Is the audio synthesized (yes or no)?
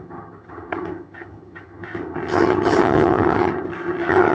yes